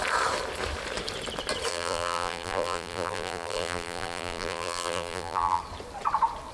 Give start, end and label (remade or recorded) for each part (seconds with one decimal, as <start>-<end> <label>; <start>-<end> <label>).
0.0-1.7 recorded; 1.7-5.6 remade; 5.6-6.5 recorded